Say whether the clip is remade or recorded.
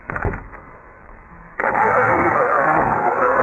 remade